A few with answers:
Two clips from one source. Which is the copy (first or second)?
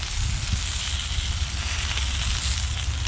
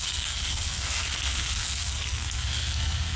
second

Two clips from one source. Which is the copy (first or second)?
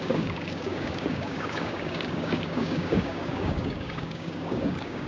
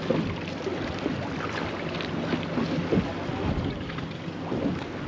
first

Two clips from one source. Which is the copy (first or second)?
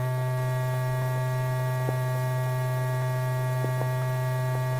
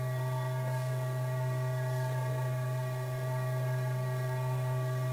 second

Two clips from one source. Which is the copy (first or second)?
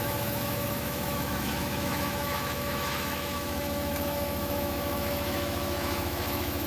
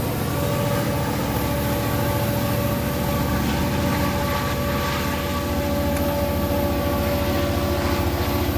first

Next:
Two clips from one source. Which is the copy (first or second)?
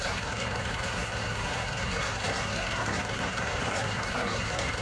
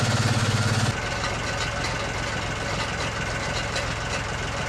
first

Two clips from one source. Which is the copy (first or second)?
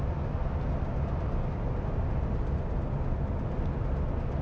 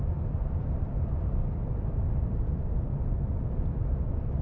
second